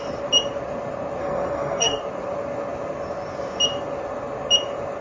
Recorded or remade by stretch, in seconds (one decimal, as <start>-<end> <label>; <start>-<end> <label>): 0.0-1.2 recorded; 1.2-2.0 remade; 2.0-5.0 recorded